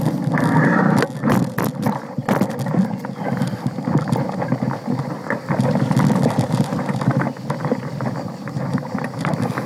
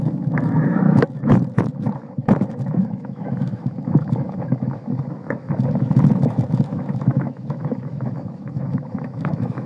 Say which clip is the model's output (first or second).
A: second